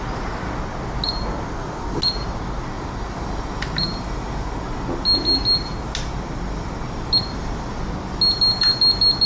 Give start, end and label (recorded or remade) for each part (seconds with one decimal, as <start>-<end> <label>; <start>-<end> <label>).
0.0-9.3 recorded